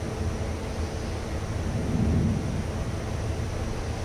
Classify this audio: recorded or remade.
recorded